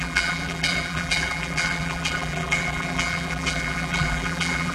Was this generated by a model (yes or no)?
yes